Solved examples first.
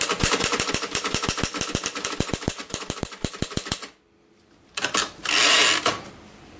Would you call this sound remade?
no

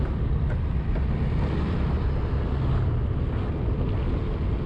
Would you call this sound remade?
no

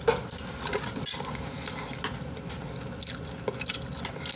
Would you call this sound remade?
no